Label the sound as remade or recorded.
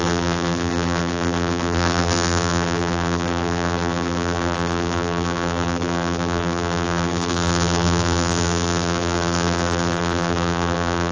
remade